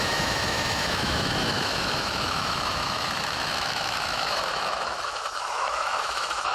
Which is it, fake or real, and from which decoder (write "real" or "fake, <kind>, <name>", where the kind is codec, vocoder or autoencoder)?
fake, autoencoder, DAC-VAE